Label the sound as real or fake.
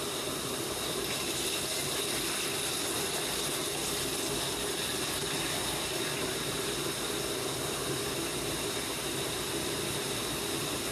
real